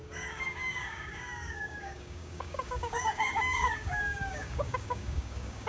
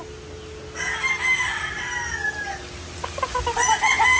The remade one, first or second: first